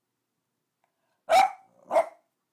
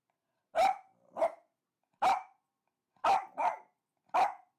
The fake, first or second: second